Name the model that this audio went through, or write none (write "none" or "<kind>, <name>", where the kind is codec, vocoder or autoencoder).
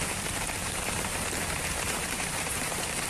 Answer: vocoder, BigVGAN v2